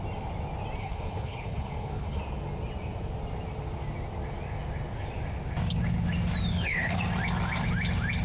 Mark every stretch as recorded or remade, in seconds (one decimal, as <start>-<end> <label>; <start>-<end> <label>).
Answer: 0.0-0.8 recorded; 0.8-2.2 remade; 2.2-6.5 recorded; 6.5-7.0 remade; 7.0-8.2 recorded